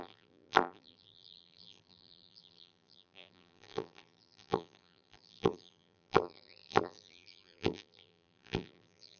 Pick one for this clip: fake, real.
fake